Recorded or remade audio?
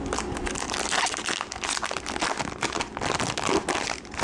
recorded